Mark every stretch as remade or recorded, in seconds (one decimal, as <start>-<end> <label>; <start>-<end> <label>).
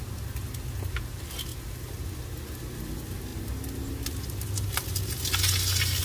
0.0-6.0 recorded